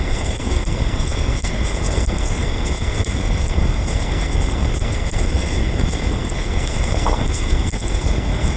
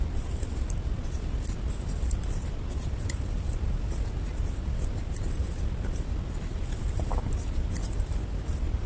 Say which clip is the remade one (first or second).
first